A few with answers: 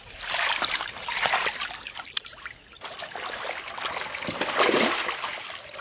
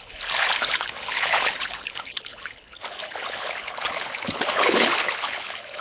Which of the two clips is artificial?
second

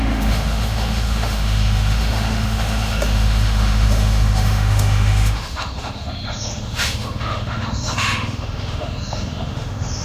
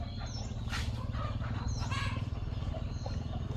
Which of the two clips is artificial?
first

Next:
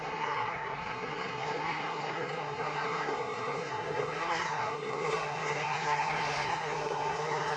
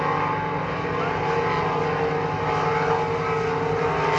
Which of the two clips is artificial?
first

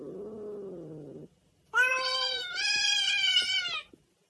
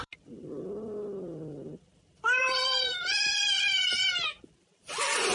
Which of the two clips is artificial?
second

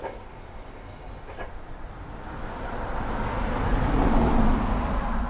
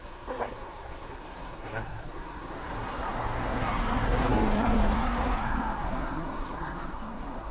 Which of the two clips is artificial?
second